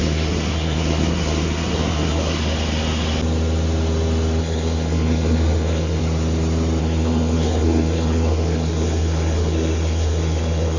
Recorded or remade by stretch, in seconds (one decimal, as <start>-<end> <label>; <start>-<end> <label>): 0.0-2.4 remade; 2.4-4.4 recorded; 4.4-6.0 remade; 6.0-6.8 recorded; 6.8-10.8 remade